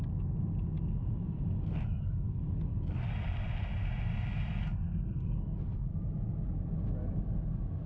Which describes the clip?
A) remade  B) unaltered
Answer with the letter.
B